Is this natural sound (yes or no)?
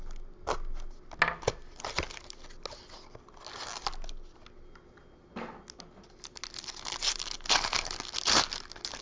yes